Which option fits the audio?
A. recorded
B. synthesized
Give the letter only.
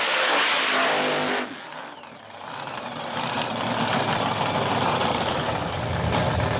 A